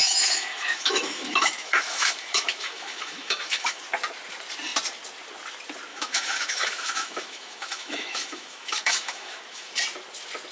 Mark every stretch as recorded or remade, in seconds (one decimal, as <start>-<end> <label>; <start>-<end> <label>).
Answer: 0.0-3.8 remade; 3.8-5.9 recorded; 5.9-9.7 remade; 9.7-10.5 recorded